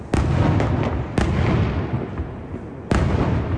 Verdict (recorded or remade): recorded